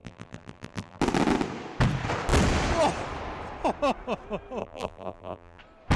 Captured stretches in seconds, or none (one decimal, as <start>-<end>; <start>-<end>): 1.0-4.6; 5.6-6.0